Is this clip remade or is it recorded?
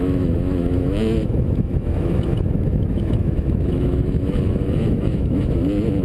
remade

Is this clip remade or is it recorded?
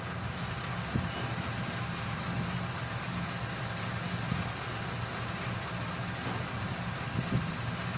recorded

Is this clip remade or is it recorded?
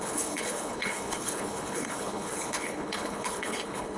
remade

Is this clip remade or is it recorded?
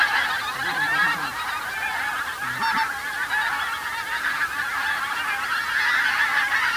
recorded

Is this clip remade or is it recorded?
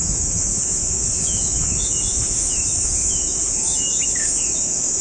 remade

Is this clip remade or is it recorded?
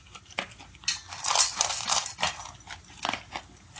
recorded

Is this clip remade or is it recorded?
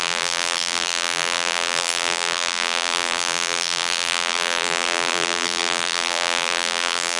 remade